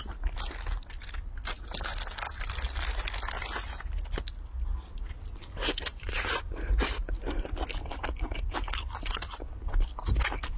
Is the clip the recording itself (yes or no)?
yes